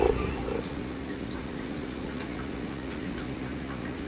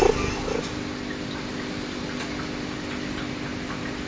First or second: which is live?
second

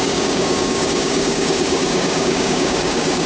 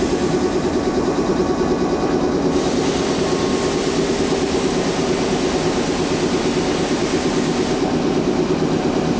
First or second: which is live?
second